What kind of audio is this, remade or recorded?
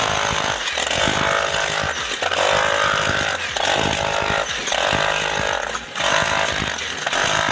recorded